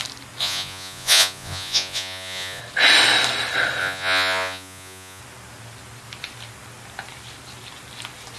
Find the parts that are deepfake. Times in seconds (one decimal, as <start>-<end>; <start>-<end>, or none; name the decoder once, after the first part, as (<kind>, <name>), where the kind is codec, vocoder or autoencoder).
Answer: 0.4-2.6 (vocoder, Vocos); 3.8-5.2

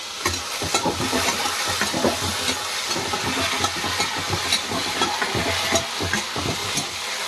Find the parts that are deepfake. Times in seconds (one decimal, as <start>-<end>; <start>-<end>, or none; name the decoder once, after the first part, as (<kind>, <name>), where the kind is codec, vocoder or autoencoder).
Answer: none

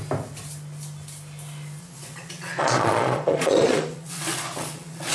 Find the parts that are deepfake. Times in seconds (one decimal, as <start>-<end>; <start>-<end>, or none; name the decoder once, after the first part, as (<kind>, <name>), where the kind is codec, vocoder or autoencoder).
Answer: 1.8-5.1 (vocoder, Vocos)

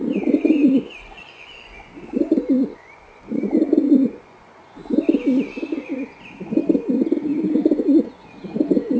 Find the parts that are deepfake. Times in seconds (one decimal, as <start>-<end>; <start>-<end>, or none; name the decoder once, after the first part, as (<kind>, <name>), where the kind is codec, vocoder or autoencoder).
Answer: 0.0-4.8 (vocoder, Vocos); 5.7-6.6; 7.5-9.0

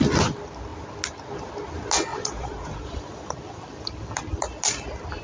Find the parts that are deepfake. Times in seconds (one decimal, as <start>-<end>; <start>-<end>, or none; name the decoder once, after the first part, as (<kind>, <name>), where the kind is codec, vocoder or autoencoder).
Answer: 2.1-3.4 (vocoder, Vocos)

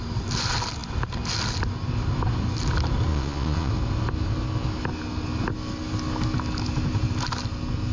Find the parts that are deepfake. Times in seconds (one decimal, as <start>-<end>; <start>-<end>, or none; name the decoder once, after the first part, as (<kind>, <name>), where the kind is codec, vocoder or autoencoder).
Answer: 3.1-3.7 (vocoder, Vocos)

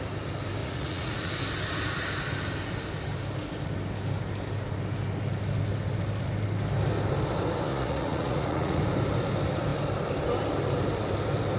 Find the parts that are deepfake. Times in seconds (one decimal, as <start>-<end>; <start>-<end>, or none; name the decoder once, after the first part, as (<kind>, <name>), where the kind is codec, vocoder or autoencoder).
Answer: 0.6-1.3 (vocoder, Vocos); 7.7-8.8

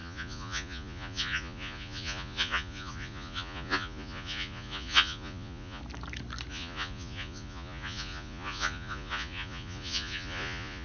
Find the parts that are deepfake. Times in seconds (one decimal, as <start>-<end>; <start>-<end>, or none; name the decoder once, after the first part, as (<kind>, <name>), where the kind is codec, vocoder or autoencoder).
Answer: 0.0-5.8 (vocoder, Vocos); 6.5-10.8